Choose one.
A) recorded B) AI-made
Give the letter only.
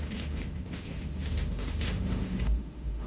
B